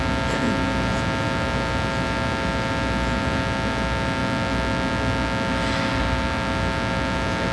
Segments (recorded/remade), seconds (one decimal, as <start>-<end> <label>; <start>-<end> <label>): 0.0-7.5 recorded